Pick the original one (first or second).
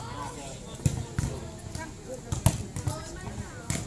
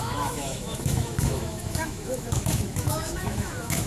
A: first